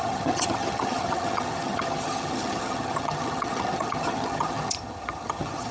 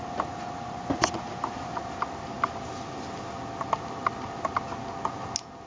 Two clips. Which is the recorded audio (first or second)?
second